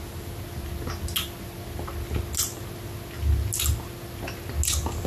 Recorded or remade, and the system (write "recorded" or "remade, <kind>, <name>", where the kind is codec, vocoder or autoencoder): recorded